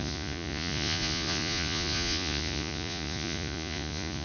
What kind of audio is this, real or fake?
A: fake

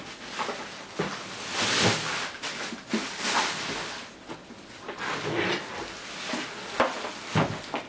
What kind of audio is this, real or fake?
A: real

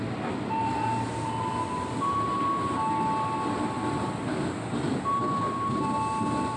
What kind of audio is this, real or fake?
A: real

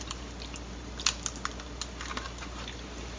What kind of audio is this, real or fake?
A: real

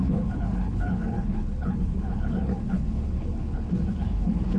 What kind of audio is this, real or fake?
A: fake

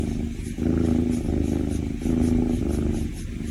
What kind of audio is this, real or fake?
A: real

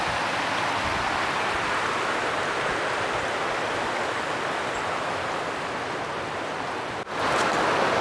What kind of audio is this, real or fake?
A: real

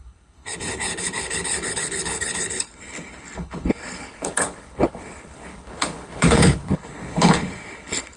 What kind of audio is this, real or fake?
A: fake